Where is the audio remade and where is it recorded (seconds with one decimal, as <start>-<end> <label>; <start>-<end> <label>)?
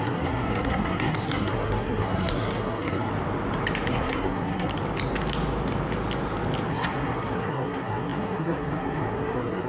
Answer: 0.0-3.1 remade; 3.1-3.9 recorded; 3.9-4.7 remade; 4.7-6.7 recorded; 6.7-9.7 remade